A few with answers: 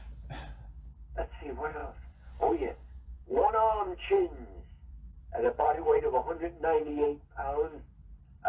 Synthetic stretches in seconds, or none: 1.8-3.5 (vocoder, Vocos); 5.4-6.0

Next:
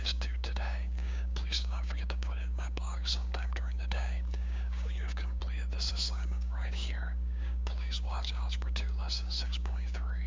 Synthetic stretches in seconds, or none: 0.0-5.4 (codec, DAC); 5.9-10.3

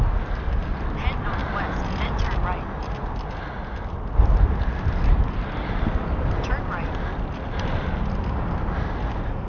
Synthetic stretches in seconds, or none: none